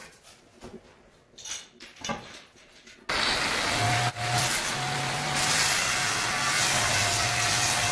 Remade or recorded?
recorded